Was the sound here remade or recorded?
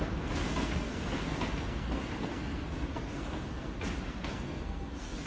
remade